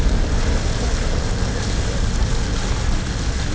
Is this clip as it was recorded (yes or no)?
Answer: yes